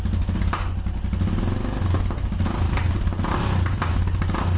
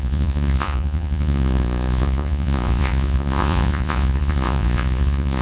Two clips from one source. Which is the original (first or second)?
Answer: first